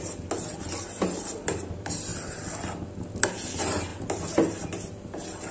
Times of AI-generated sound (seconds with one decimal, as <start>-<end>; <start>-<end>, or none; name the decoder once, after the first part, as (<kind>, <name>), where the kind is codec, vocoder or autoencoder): none